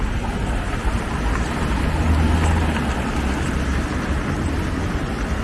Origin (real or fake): real